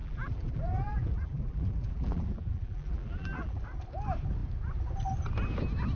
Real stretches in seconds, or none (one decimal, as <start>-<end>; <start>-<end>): 3.6-6.0